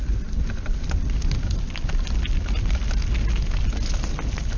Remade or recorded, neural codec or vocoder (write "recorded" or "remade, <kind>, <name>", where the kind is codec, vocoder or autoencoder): recorded